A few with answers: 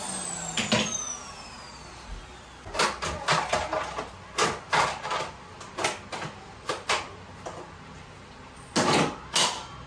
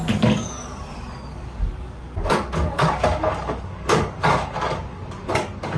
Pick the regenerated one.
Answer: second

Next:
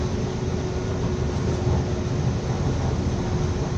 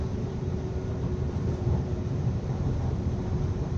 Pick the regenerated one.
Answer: second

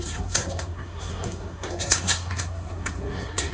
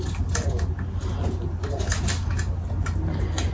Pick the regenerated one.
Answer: first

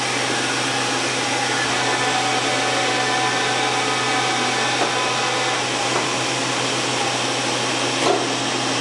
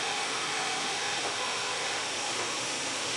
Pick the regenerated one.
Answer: second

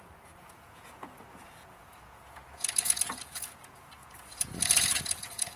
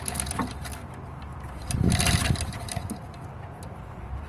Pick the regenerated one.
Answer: first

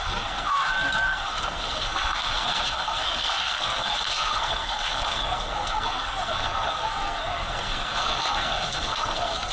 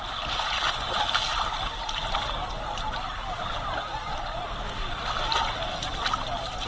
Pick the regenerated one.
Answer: first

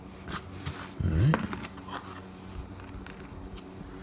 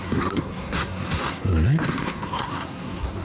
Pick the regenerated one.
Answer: second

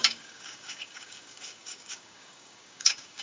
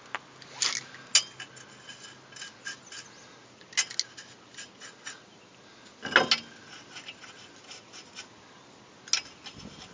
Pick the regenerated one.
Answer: first